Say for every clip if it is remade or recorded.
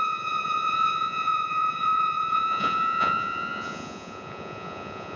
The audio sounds remade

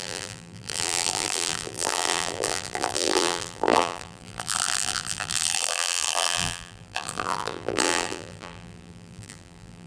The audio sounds remade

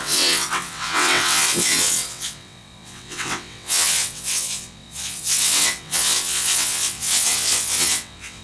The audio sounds remade